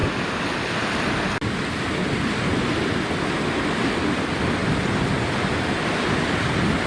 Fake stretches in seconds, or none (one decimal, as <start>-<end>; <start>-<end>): none